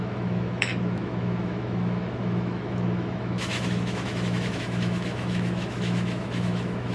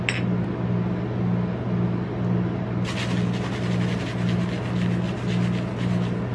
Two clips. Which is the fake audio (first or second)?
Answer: first